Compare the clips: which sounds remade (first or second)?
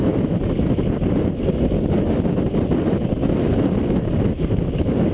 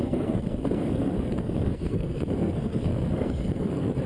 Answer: second